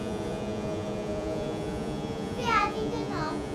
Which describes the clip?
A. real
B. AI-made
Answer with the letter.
B